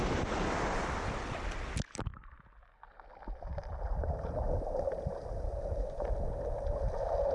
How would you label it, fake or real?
real